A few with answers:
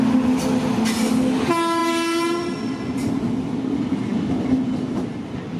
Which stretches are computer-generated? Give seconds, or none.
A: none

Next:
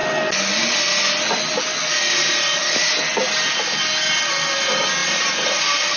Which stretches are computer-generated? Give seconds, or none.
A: none

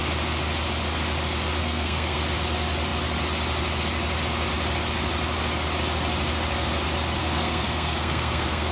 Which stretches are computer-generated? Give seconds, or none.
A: 1.6-2.2 (codec, SNAC); 7.2-8.7

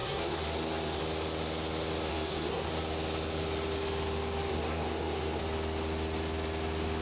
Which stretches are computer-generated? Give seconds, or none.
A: 0.0-1.0 (codec, SNAC); 2.1-2.7; 4.5-5.4

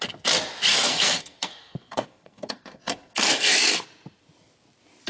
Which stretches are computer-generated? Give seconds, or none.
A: 0.7-3.8 (codec, SNAC)

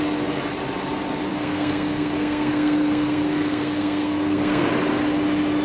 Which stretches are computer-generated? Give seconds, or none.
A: 1.3-4.7 (codec, SNAC)

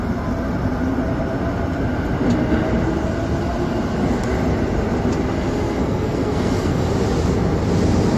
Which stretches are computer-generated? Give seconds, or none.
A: 5.8-6.9 (codec, SNAC)